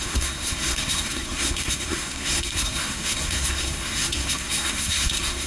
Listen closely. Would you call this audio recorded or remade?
remade